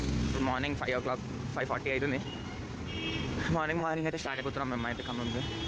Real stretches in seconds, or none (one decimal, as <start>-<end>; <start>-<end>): 0.0-3.8; 4.4-5.7